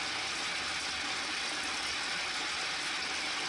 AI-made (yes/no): no